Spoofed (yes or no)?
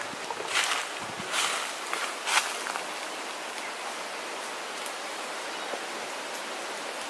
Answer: no